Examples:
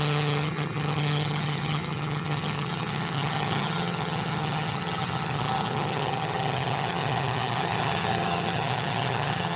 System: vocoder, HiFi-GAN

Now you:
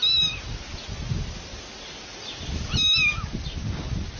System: none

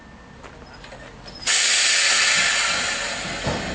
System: none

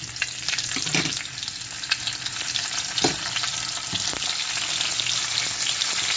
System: none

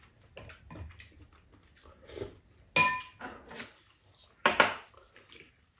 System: none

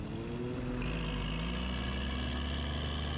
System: none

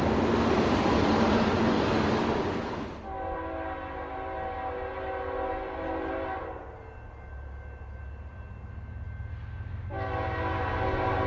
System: none